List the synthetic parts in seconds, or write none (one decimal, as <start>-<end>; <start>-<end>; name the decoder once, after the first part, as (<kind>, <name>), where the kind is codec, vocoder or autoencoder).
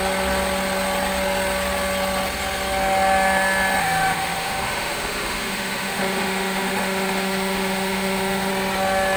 3.8-8.5 (autoencoder, DAC-VAE)